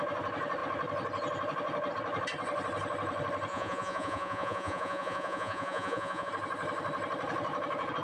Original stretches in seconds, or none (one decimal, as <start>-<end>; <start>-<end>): 0.0-3.5; 6.3-8.0